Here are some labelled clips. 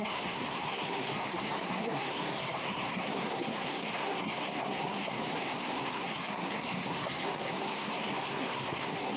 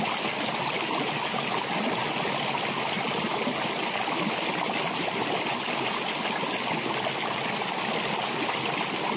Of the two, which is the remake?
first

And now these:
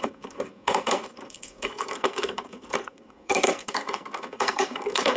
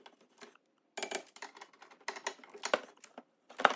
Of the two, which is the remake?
first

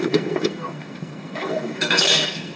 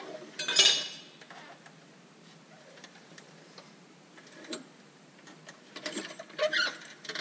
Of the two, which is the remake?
first